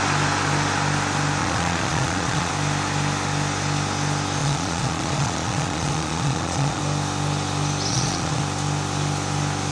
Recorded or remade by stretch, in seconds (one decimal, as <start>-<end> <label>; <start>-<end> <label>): 0.0-1.4 recorded; 1.4-2.5 remade; 2.5-4.4 recorded; 4.4-6.8 remade; 6.8-7.9 recorded; 7.9-8.4 remade; 8.4-9.7 recorded